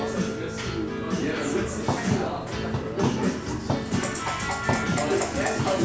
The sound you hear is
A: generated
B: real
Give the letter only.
B